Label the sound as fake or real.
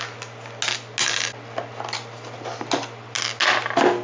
real